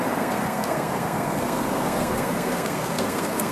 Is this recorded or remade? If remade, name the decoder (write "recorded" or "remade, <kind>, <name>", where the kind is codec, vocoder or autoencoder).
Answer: remade, codec, SNAC